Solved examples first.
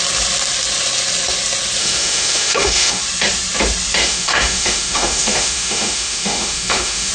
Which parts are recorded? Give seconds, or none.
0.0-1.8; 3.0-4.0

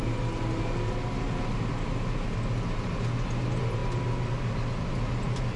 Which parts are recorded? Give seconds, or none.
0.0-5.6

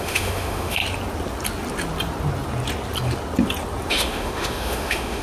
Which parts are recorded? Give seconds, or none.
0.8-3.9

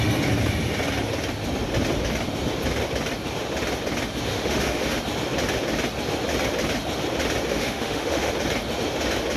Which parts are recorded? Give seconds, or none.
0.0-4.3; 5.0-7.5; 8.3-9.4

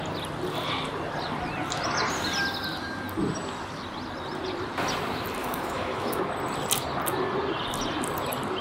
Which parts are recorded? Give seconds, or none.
0.0-5.4; 6.2-8.6

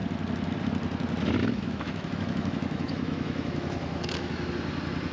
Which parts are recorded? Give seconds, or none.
0.0-1.4; 4.5-5.1

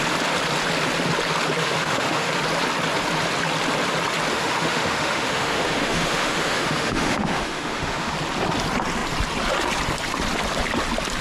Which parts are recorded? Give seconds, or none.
0.0-1.6; 2.3-4.3; 8.1-11.2